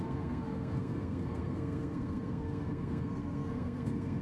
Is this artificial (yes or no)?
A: yes